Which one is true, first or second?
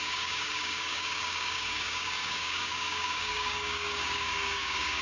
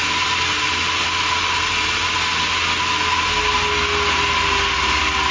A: second